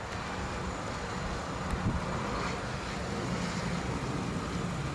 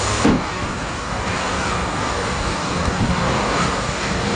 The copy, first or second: second